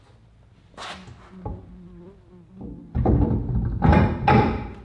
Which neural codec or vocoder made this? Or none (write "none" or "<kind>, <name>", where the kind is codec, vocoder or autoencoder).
none